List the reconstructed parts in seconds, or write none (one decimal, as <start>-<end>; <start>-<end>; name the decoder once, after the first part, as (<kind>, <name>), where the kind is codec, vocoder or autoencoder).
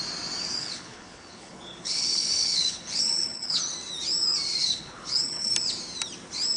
0.6-3.6 (codec, HILCodec); 4.6-5.5